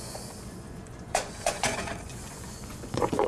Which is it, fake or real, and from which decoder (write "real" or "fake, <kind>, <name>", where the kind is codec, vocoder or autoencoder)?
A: fake, vocoder, Vocos